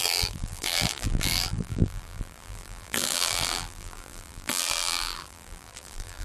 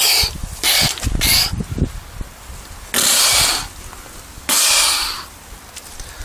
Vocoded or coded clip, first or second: first